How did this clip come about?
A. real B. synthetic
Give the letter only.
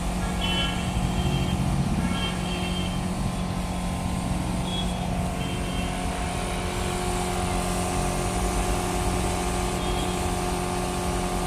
A